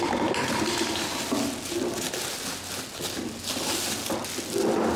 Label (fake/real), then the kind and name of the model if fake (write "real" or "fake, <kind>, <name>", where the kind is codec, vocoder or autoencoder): real